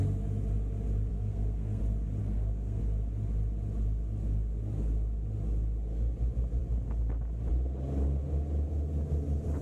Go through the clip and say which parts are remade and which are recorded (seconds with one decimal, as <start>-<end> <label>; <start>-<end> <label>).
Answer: 0.0-1.1 recorded; 1.1-1.8 remade; 1.8-2.2 recorded; 2.2-2.8 remade; 2.8-9.6 recorded